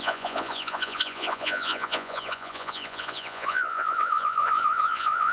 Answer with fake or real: fake